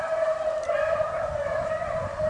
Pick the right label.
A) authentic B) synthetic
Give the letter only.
B